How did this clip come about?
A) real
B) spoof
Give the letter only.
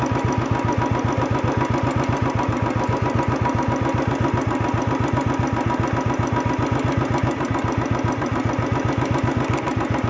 A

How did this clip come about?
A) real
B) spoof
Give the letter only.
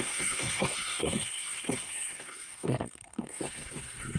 B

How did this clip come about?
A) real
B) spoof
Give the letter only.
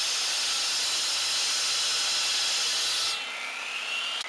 A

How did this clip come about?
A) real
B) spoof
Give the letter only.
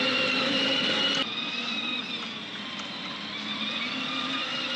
A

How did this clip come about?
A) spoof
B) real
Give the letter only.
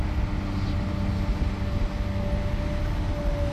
B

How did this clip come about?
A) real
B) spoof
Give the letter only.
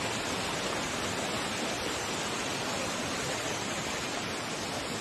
A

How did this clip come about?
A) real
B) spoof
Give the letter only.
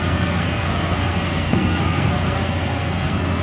B